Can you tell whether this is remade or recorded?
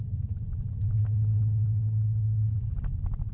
recorded